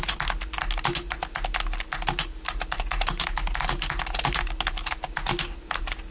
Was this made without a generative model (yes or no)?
yes